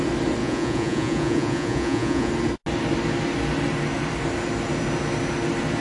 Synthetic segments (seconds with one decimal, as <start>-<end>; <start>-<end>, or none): 0.4-2.3